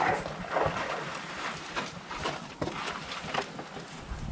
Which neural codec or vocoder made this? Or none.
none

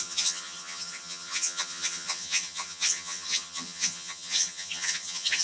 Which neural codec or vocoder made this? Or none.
vocoder, HiFi-GAN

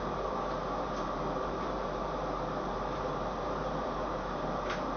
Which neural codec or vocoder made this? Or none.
vocoder, BigVGAN v2